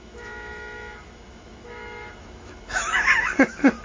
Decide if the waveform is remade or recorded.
remade